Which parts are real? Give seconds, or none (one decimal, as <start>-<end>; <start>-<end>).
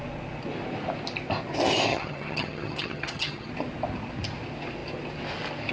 0.0-1.9; 3.5-5.7